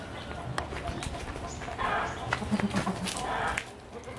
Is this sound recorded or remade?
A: recorded